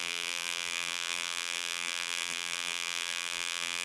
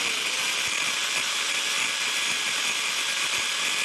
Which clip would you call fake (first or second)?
first